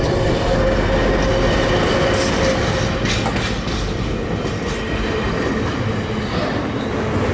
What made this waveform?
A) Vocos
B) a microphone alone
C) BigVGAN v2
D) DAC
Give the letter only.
B